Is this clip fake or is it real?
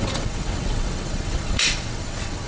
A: fake